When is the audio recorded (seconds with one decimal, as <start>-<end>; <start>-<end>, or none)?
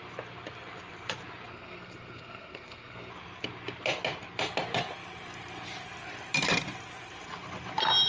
0.0-1.5; 3.1-8.1